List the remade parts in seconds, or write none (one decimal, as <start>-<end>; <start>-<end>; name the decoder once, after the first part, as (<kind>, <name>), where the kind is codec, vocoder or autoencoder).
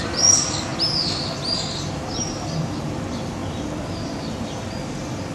none